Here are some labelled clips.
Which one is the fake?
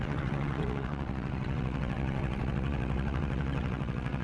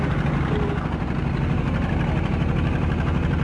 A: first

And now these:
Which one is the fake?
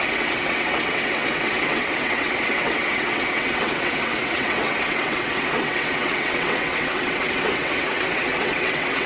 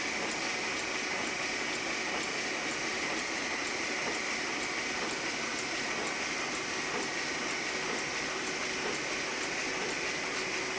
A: first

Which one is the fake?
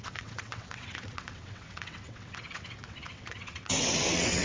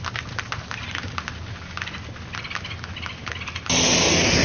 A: first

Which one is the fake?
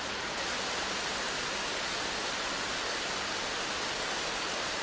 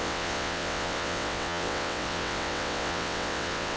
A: second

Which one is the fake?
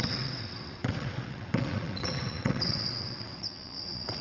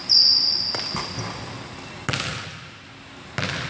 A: first